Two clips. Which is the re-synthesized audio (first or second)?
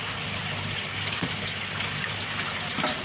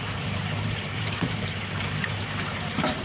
second